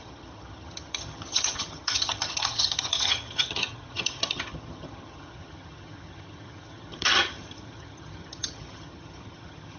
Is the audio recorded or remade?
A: remade